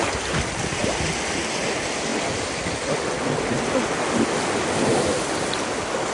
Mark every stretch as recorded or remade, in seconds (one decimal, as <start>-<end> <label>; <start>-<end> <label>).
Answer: 0.0-6.1 recorded